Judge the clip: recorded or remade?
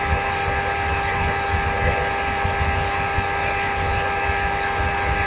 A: recorded